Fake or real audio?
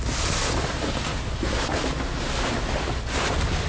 real